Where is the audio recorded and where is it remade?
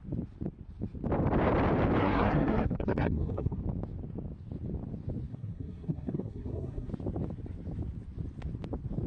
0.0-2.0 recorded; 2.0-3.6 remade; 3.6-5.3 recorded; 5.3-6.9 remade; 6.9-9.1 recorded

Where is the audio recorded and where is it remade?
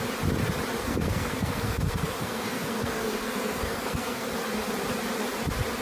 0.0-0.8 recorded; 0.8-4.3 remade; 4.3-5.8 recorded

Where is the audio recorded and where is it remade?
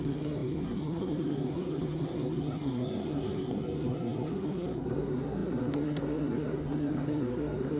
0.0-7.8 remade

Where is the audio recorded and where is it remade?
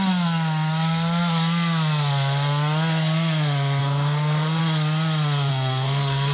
0.0-3.8 recorded; 3.8-4.6 remade; 4.6-5.5 recorded; 5.5-6.3 remade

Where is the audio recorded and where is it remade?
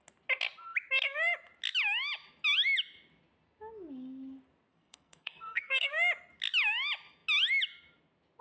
0.0-4.7 recorded; 4.7-5.9 remade; 5.9-8.4 recorded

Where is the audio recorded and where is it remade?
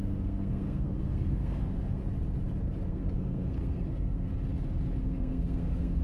0.0-2.0 remade; 2.0-2.9 recorded; 2.9-4.3 remade; 4.3-5.0 recorded; 5.0-6.0 remade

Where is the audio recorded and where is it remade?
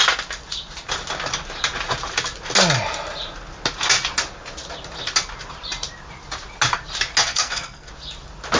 0.0-7.2 recorded; 7.2-7.9 remade; 7.9-8.6 recorded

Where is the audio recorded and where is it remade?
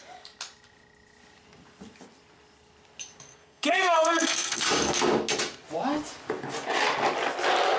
0.0-3.3 recorded; 3.3-4.7 remade; 4.7-7.8 recorded